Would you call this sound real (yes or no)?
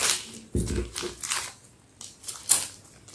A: yes